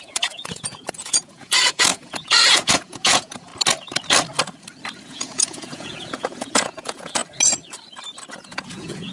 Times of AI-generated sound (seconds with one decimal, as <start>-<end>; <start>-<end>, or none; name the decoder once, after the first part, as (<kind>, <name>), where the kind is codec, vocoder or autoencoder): 0.0-3.5 (vocoder, Vocos); 5.1-7.2; 8.3-9.1